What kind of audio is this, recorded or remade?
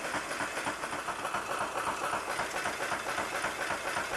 recorded